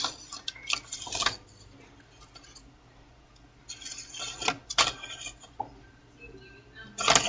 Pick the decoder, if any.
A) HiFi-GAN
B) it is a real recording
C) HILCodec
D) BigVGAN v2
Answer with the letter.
B